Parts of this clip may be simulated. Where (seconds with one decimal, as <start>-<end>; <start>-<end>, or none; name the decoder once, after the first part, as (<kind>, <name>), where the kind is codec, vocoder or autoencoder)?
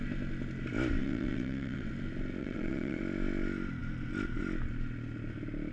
1.0-1.9 (vocoder, WaveNeXt); 2.4-3.0